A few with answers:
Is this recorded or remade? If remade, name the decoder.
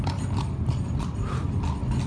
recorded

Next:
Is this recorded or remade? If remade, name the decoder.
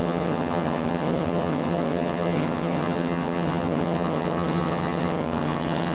remade, vocoder, HiFi-GAN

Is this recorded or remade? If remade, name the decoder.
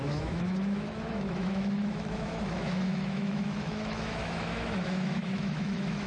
remade, autoencoder, DAC-VAE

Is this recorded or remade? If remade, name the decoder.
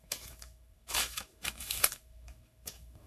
remade, autoencoder, DAC-VAE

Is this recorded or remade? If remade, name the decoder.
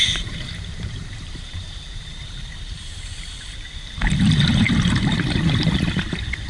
remade, vocoder, BigVGAN v2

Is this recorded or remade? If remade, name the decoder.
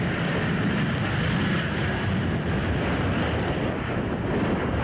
recorded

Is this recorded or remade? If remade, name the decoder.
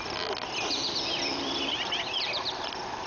recorded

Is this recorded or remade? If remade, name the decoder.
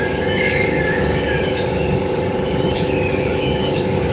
remade, codec, DAC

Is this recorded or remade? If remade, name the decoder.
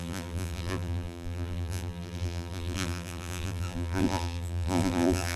remade, vocoder, BigVGAN v2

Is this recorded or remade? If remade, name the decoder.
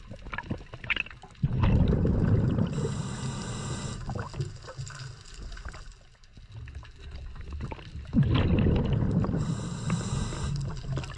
recorded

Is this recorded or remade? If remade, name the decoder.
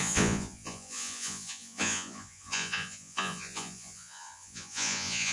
remade, vocoder, Vocos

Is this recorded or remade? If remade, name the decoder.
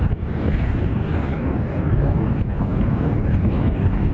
remade, codec, DAC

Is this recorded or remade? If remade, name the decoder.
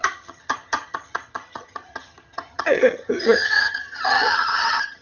remade, vocoder, HiFi-GAN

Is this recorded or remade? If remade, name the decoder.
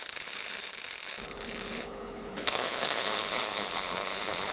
remade, codec, HILCodec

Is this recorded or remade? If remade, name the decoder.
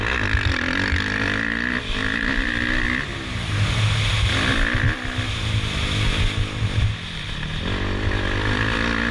recorded